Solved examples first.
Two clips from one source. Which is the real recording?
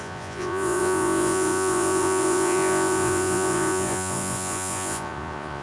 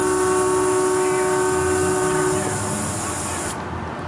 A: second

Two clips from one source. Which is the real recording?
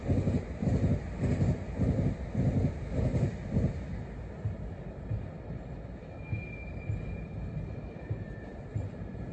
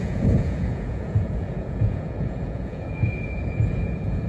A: first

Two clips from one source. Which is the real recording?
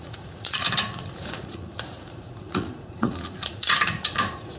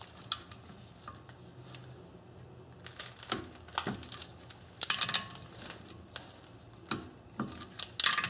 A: second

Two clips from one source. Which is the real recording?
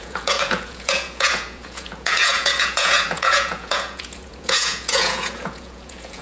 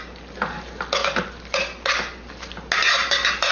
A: second